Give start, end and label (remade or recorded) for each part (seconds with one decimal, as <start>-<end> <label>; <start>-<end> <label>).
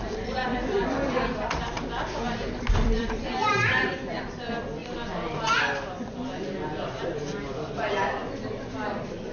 0.0-4.8 remade; 4.8-7.7 recorded; 7.7-8.2 remade; 8.2-9.3 recorded